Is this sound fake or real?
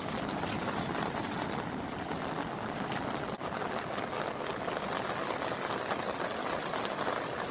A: real